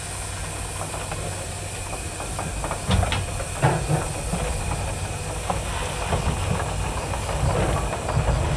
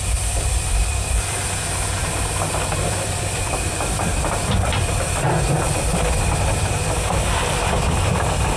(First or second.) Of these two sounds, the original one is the first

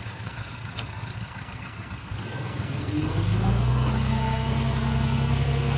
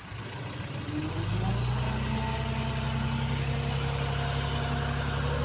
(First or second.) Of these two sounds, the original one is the second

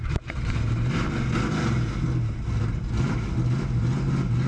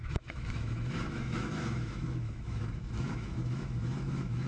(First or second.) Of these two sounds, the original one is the first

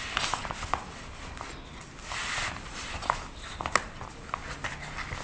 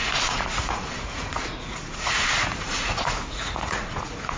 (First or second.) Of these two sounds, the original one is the first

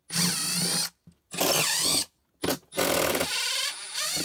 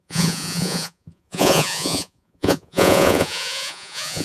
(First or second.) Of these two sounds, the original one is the first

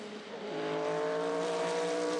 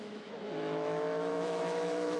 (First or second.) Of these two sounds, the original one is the first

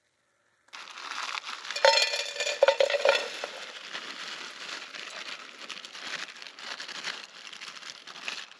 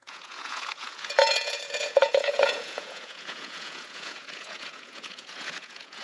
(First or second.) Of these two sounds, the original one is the first